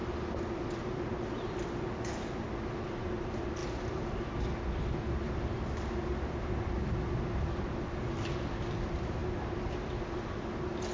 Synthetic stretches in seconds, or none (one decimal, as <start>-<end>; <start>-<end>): none